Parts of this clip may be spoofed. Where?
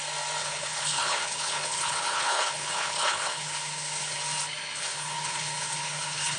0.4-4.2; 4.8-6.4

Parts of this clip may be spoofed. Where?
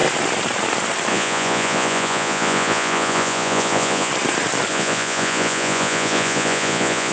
1.1-4.1; 4.7-7.1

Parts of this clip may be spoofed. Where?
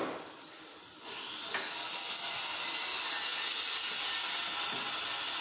2.9-3.6